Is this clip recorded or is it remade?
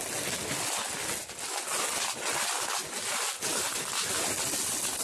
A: recorded